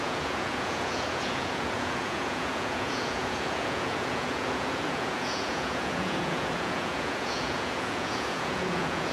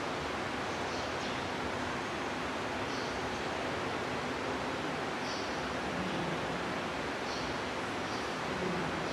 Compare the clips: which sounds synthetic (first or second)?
first